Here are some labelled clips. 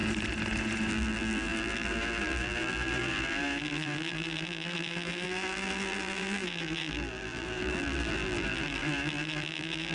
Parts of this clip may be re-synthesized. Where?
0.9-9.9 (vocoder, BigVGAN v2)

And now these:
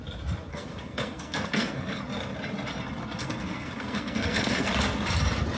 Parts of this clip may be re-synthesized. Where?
0.5-2.0 (codec, SNAC); 3.2-4.7

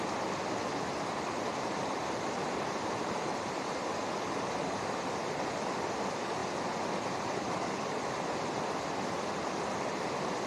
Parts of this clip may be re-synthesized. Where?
none

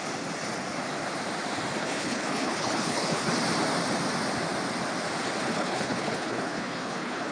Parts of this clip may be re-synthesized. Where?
1.8-3.3 (codec, HILCodec); 5.4-7.3

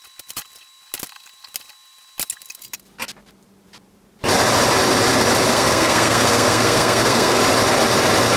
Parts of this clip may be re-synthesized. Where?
5.5-7.4 (codec, SNAC)

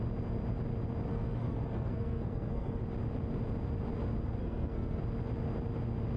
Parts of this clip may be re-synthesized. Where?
1.1-2.8 (codec, SNAC); 4.4-5.0

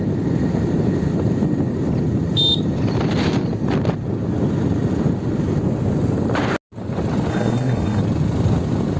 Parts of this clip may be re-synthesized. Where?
7.3-8.0 (codec, SNAC)